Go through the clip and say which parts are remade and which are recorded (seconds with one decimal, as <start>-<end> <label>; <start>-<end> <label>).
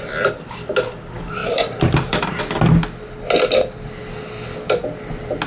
0.0-1.4 recorded; 1.4-2.4 remade; 2.4-5.5 recorded